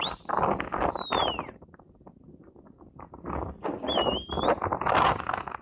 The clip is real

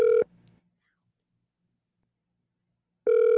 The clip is real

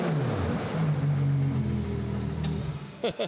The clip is real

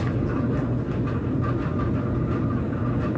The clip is real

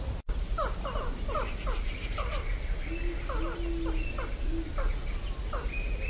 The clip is real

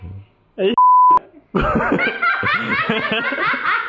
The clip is real